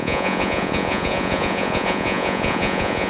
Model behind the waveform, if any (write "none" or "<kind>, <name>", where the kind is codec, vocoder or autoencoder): vocoder, Vocos